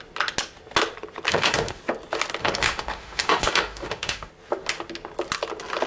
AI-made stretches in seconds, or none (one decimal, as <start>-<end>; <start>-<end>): 1.3-1.8; 2.4-4.3